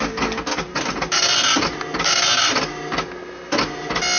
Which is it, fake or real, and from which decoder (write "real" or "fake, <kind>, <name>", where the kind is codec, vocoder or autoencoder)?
real